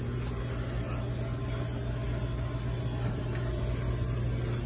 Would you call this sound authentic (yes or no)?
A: yes